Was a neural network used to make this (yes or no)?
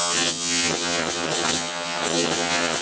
yes